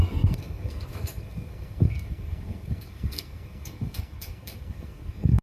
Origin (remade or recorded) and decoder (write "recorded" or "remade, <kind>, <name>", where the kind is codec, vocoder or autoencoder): remade, codec, SNAC